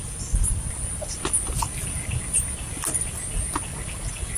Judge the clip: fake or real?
real